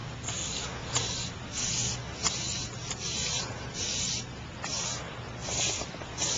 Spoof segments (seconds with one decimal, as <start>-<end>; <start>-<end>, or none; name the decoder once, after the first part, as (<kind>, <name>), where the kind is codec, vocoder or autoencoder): 0.0-1.5 (vocoder, BigVGAN v2); 2.6-4.5